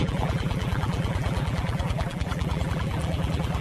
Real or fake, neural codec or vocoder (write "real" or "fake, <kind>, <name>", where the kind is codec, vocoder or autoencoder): fake, vocoder, BigVGAN v2